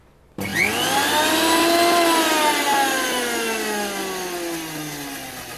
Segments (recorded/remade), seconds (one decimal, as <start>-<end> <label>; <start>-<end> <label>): 0.0-5.6 recorded